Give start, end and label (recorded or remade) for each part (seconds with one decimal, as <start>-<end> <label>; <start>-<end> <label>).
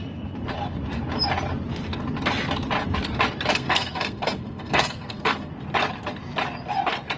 0.0-3.5 recorded; 3.5-5.5 remade; 5.5-7.2 recorded